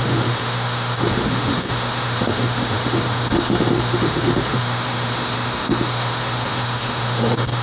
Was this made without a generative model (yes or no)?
no